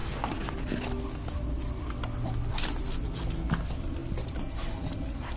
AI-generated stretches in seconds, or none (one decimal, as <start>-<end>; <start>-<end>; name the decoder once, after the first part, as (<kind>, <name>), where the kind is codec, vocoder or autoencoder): none